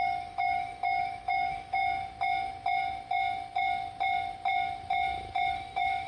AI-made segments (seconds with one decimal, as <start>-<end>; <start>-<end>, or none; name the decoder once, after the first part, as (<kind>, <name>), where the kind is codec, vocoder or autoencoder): 0.0-1.8 (autoencoder, DAC-VAE); 5.5-6.1